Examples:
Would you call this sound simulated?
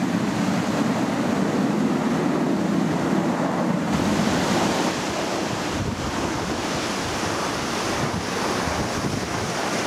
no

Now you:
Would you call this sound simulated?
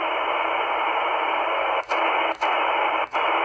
no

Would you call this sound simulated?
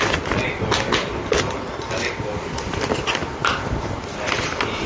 no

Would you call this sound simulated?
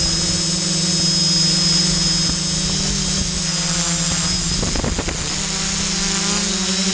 no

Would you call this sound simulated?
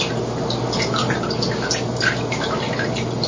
no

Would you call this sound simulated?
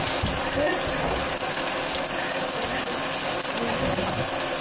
no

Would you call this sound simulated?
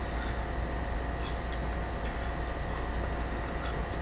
no